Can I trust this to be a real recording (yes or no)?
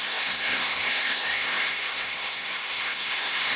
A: no